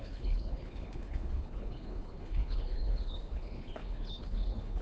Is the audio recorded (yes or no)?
no